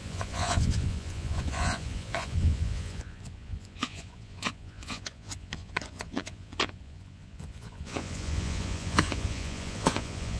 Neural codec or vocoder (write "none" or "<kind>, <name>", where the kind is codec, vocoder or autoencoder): vocoder, Vocos